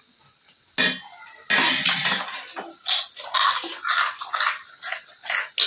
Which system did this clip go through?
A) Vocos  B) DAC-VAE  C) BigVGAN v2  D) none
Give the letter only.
D